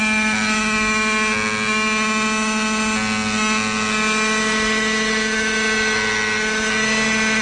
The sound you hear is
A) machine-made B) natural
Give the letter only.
B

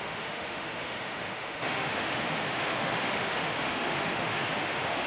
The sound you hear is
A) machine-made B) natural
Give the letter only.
A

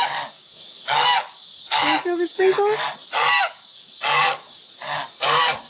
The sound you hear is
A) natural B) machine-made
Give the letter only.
B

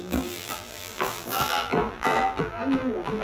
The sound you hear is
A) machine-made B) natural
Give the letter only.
A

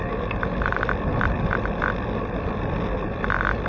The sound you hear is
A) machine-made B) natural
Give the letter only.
B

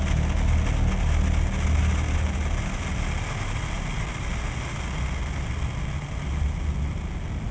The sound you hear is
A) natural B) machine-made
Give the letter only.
A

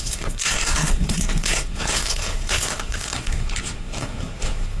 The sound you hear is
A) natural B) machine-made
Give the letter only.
B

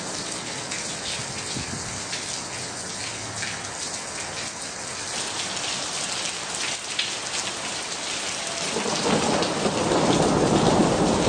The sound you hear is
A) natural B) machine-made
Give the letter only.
A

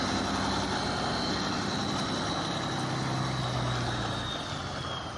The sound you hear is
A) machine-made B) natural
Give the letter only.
B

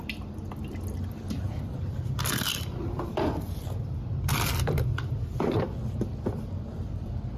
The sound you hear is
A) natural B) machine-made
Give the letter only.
B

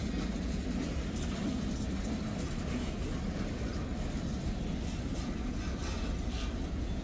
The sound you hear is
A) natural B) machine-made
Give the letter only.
A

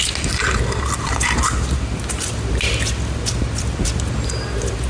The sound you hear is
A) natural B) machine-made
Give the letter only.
A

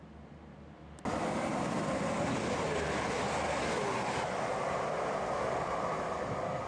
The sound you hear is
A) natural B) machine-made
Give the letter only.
A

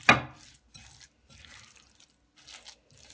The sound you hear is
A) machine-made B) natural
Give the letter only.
B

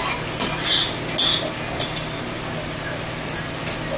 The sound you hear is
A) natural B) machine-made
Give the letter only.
A